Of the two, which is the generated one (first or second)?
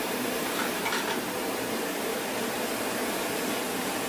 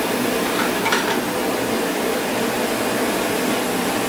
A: first